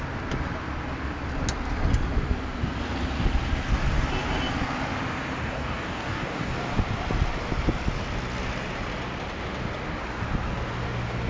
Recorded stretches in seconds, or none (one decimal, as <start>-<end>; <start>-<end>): 0.0-5.4; 6.5-11.3